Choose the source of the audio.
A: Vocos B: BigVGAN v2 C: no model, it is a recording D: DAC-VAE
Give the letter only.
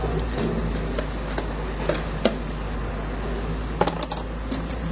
C